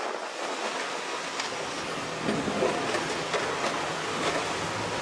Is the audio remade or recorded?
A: recorded